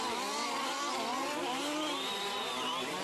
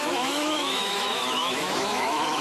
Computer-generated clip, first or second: second